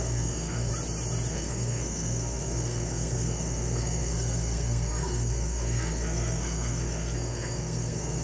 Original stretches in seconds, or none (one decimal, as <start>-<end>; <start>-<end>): 0.7-1.3